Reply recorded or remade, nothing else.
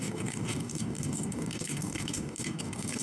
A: remade